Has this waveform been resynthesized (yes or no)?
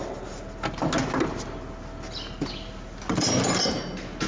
no